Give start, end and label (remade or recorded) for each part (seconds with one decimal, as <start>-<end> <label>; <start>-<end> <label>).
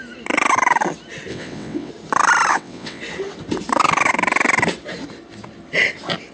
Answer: 0.0-1.3 recorded; 1.3-1.9 remade; 1.9-2.5 recorded; 2.5-3.0 remade; 3.0-6.3 recorded